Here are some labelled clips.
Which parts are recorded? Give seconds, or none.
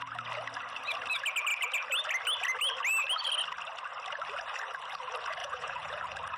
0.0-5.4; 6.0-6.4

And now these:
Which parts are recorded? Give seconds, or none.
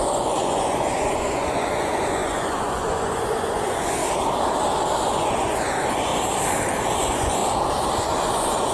4.0-5.0; 6.1-7.0; 7.4-8.0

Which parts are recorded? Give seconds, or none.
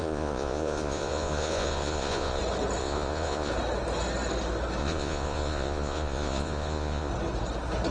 2.4-2.8; 3.5-4.8; 7.1-7.9